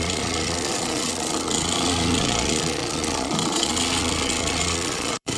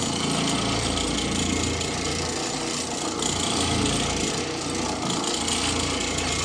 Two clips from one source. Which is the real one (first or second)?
second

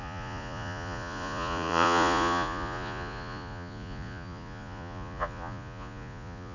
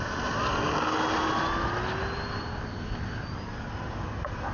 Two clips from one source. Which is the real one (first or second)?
second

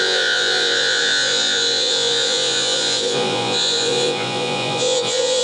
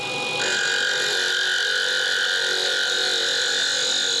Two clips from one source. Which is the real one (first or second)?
second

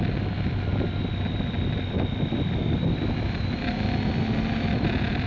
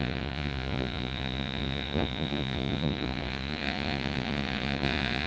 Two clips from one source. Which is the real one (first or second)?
first